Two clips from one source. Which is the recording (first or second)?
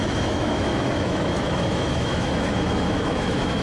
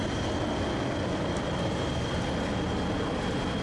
second